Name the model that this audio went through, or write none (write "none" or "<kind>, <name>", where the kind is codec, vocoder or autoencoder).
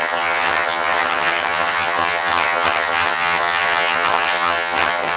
vocoder, HiFi-GAN